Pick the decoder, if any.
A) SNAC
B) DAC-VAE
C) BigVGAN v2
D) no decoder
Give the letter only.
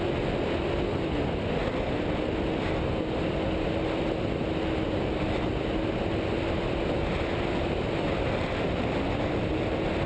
D